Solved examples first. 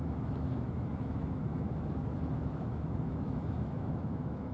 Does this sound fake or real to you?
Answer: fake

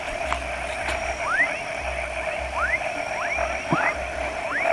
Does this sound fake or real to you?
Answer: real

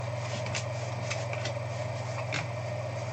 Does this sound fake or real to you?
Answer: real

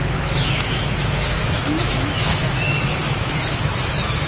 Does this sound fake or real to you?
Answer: fake